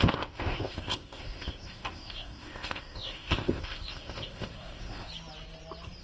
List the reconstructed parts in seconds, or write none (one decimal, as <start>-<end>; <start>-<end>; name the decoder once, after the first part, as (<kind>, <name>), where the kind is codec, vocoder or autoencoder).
0.0-5.1 (codec, ZipCodec)

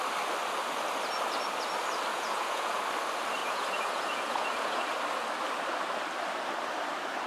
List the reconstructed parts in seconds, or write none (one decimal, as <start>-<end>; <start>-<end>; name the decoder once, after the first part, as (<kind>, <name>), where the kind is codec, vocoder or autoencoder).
2.1-2.8 (vocoder, Vocos); 3.4-4.8

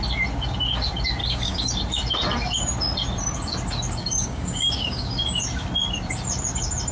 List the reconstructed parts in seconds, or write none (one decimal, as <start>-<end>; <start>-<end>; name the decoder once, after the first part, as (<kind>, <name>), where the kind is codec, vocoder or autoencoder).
1.2-1.7 (codec, DAC); 4.0-5.1

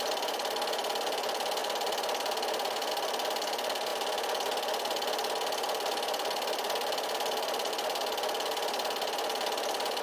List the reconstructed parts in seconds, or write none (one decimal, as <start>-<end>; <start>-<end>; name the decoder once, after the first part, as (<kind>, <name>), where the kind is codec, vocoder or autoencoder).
none

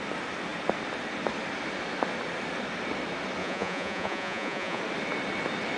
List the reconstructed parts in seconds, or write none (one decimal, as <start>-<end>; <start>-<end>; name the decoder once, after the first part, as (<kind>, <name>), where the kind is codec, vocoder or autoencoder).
3.4-4.8 (vocoder, Vocos)

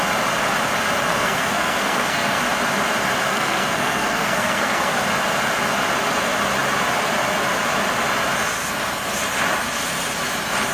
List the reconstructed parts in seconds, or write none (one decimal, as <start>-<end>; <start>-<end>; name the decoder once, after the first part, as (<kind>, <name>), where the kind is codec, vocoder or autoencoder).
1.1-2.4 (codec, SNAC); 3.3-5.0